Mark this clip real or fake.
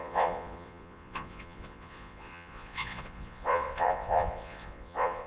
fake